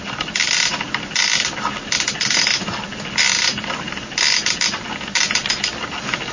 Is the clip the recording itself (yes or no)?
yes